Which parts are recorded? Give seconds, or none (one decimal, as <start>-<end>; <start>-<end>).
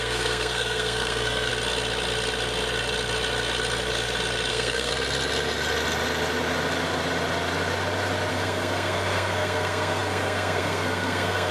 1.5-4.5; 4.9-8.3